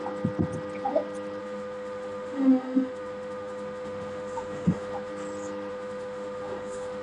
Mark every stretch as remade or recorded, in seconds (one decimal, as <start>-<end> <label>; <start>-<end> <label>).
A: 0.0-1.4 recorded; 1.4-5.1 remade; 5.1-5.7 recorded; 5.7-7.0 remade